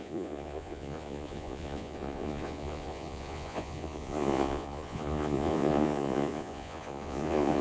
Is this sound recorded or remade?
remade